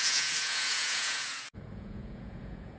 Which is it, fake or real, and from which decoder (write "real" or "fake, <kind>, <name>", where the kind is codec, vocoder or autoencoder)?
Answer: fake, vocoder, Vocos